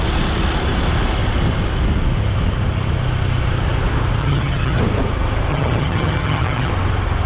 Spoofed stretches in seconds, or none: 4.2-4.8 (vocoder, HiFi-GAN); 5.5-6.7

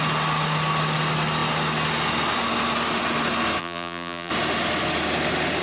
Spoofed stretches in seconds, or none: 3.6-4.3 (vocoder, BigVGAN v2)